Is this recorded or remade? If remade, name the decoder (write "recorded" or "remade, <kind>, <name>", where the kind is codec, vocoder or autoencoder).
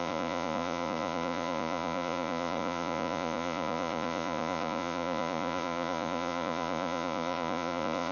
remade, vocoder, Vocos